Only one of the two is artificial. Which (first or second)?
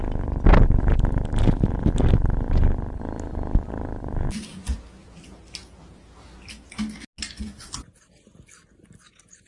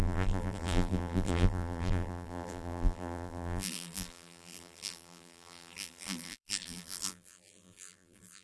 second